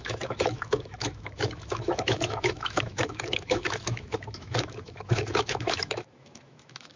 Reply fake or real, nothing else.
fake